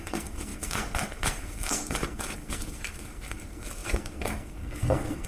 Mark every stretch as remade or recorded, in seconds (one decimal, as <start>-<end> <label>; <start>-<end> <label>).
0.0-5.3 remade